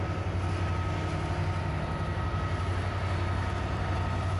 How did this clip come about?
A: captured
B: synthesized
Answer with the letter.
A